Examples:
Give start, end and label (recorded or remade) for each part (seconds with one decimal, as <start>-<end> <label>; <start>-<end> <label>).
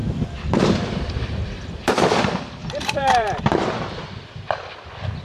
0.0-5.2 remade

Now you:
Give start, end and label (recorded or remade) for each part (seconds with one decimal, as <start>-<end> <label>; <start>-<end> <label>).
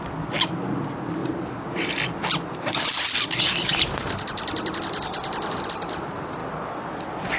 0.0-7.4 recorded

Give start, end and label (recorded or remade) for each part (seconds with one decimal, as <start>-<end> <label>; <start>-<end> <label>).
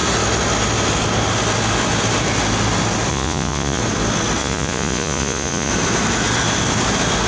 0.0-3.1 recorded; 3.1-3.8 remade; 3.8-4.4 recorded; 4.4-5.7 remade; 5.7-7.3 recorded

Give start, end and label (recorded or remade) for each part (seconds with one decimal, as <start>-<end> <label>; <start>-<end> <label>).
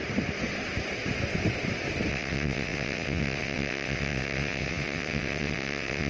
0.0-2.1 recorded; 2.1-6.1 remade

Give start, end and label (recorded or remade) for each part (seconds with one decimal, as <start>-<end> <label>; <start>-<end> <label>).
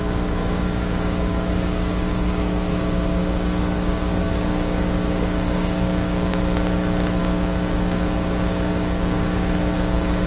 0.0-6.3 remade; 6.3-7.2 recorded; 7.2-10.3 remade